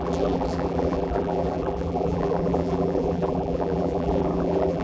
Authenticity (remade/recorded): remade